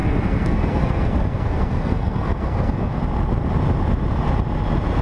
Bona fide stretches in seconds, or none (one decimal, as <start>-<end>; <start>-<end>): 3.0-5.0